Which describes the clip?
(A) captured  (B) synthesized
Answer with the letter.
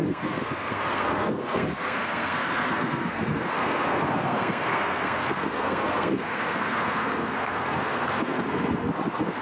B